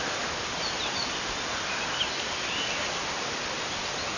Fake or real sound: real